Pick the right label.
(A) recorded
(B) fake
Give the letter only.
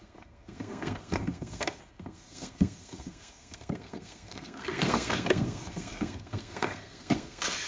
B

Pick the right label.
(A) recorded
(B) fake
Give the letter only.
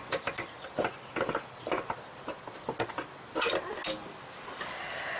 A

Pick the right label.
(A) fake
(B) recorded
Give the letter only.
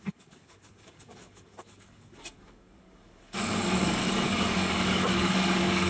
A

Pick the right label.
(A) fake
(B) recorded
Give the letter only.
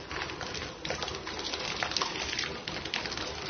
B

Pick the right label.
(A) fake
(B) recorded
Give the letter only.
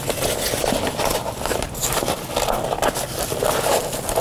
B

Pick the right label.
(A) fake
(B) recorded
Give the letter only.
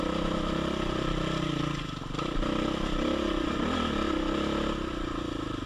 B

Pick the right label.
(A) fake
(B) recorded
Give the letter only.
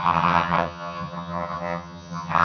A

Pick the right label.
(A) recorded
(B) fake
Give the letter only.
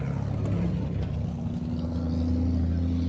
A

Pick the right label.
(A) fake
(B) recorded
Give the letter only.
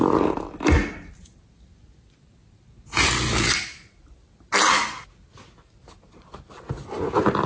B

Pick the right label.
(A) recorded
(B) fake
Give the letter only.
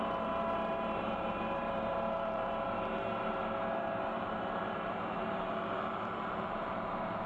B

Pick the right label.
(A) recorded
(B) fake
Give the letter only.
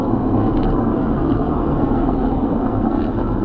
B